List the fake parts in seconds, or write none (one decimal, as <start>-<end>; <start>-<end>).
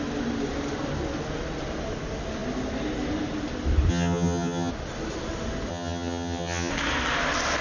3.9-4.7; 5.7-6.7